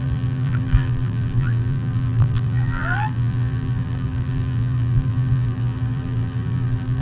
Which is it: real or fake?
fake